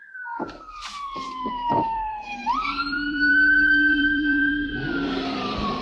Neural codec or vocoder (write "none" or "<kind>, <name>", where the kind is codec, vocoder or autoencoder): vocoder, BigVGAN v2